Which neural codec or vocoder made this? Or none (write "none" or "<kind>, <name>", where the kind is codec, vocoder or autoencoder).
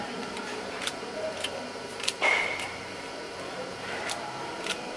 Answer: vocoder, BigVGAN v2